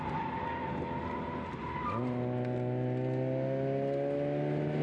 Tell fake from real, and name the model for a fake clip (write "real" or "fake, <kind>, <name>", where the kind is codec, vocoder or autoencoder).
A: real